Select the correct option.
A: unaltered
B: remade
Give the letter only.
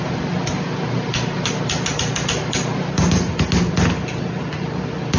A